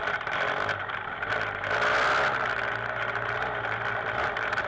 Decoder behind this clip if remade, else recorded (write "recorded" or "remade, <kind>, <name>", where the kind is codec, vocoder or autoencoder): recorded